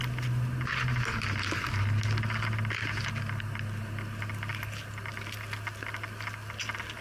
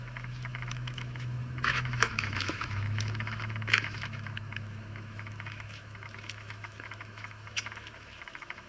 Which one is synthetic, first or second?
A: second